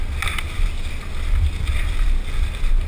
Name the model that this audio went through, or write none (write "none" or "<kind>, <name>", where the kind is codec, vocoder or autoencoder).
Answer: none